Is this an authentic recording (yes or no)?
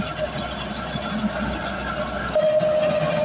yes